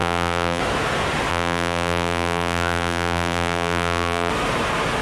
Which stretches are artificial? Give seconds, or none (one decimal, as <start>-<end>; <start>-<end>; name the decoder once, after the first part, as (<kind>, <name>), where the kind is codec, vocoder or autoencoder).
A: 0.0-0.6 (vocoder, BigVGAN v2); 1.3-4.3